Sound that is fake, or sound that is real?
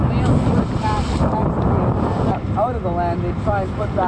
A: real